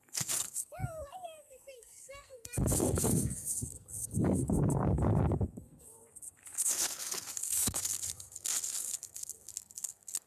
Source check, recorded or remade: remade